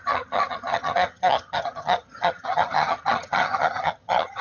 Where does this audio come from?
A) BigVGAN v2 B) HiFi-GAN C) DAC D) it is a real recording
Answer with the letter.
B